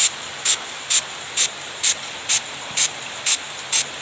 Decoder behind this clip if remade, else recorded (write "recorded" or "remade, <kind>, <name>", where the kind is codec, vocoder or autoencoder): recorded